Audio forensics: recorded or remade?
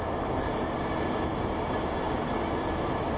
recorded